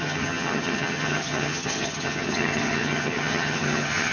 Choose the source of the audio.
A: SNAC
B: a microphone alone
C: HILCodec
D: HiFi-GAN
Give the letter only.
D